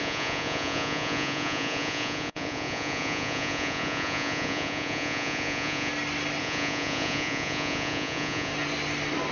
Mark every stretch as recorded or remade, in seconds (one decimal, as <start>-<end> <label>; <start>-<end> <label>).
0.0-5.9 remade; 5.9-6.4 recorded; 6.4-8.5 remade; 8.5-9.3 recorded